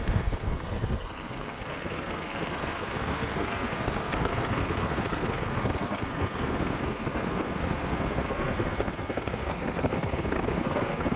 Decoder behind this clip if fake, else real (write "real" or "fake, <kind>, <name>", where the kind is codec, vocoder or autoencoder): fake, codec, SNAC